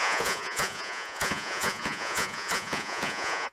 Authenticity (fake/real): fake